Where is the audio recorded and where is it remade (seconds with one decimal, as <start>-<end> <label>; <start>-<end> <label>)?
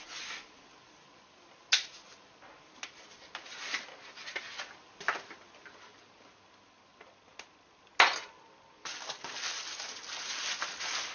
0.0-11.1 recorded